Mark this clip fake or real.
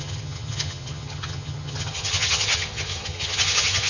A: fake